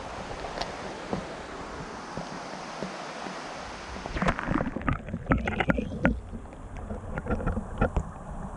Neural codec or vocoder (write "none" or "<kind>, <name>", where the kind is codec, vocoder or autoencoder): none